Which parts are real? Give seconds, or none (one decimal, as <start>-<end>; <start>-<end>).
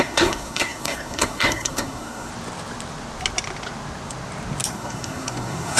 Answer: 2.3-4.7